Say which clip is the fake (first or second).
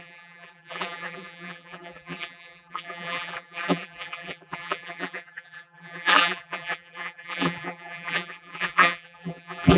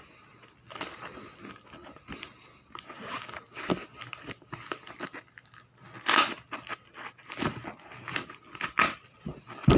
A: first